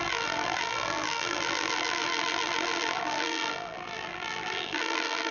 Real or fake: fake